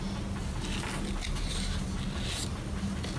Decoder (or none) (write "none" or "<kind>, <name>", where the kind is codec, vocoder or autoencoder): none